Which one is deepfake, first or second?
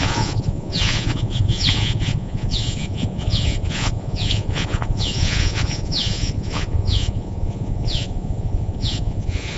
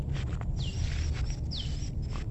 first